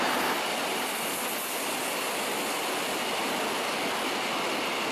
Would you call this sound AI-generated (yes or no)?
no